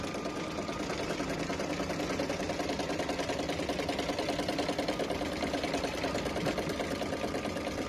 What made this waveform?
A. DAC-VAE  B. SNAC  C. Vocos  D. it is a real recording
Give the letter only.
D